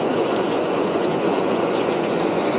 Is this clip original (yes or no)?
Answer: no